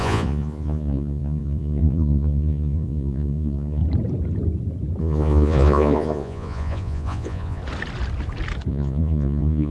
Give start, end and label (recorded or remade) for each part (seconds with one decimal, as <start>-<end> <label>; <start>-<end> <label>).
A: 0.0-3.8 remade; 3.8-5.0 recorded; 5.0-7.6 remade; 7.6-8.7 recorded; 8.7-9.7 remade